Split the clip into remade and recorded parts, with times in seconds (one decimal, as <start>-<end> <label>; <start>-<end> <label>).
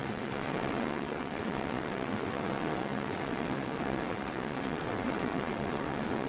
0.0-6.3 remade